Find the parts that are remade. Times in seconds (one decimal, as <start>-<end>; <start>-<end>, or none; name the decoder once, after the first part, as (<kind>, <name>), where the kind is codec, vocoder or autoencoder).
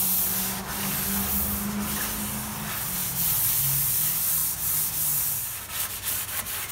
none